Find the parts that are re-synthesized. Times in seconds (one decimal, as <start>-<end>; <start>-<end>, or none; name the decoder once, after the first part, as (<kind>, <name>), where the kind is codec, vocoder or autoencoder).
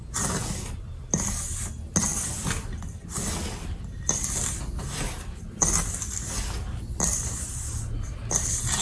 none